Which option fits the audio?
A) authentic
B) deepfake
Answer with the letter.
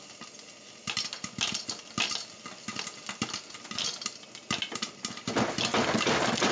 A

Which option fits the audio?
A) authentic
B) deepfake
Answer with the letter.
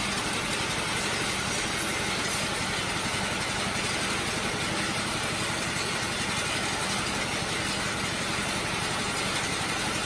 A